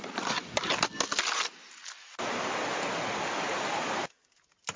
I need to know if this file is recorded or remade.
recorded